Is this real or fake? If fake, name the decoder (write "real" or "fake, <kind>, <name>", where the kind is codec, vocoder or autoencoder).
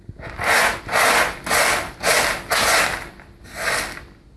real